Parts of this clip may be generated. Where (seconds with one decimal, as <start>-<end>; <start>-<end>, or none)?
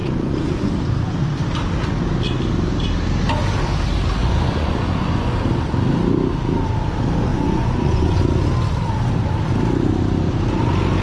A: 0.0-0.7; 4.2-5.3; 7.3-8.2